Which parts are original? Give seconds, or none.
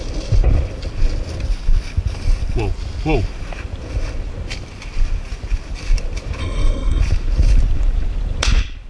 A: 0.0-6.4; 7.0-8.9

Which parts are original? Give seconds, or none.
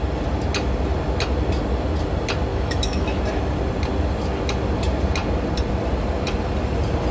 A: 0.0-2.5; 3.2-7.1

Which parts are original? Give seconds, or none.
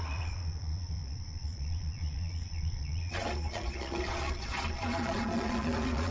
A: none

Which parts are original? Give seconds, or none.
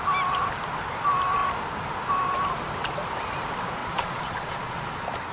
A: 0.0-3.8; 4.8-5.3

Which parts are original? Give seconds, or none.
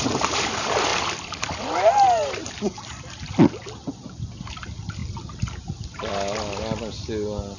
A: 0.0-0.9; 4.5-7.6